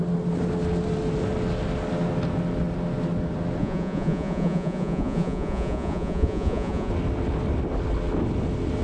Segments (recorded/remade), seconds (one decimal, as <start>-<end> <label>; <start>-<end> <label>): 0.0-3.6 recorded; 3.6-6.9 remade; 6.9-8.8 recorded